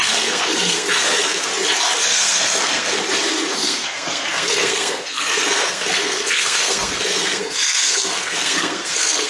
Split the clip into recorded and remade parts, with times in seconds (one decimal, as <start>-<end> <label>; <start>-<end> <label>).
0.0-1.5 remade; 1.5-2.0 recorded; 2.0-3.0 remade; 3.0-3.6 recorded; 3.6-9.3 remade